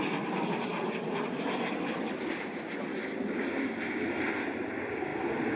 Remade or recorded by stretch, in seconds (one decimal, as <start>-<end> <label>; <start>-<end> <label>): 0.0-5.6 recorded